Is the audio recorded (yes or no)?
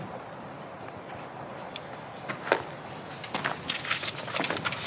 yes